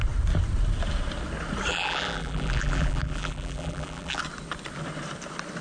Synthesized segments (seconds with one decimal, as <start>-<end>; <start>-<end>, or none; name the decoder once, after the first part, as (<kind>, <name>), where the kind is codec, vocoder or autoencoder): 1.7-4.2 (vocoder, BigVGAN v2)